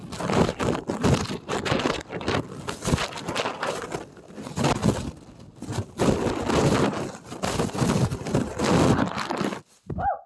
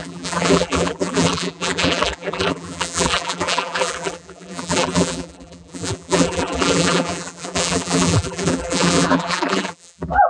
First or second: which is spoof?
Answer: second